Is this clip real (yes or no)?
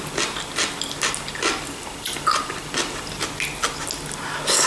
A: yes